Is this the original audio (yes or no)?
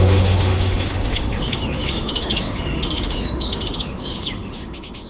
no